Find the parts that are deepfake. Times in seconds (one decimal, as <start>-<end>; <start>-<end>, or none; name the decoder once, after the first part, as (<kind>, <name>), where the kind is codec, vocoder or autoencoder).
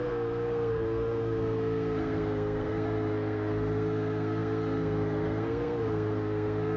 0.0-6.8 (codec, SNAC)